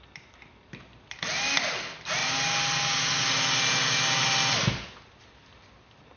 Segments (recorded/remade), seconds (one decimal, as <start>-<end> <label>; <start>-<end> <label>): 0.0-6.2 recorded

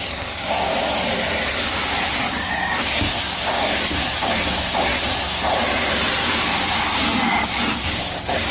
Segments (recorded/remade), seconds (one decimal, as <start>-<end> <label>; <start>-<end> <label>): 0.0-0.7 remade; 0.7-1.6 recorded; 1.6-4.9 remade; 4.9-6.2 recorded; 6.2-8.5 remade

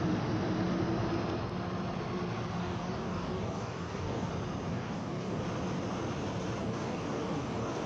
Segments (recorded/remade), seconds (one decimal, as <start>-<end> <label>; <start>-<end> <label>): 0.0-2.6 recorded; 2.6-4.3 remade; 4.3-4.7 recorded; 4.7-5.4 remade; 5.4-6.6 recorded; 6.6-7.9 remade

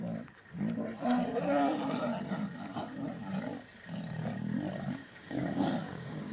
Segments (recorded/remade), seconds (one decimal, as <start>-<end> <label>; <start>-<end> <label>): 0.0-5.0 recorded; 5.0-6.3 remade